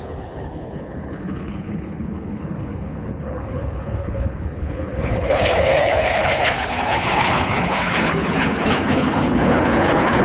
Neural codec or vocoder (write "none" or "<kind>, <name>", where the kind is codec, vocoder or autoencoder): codec, HILCodec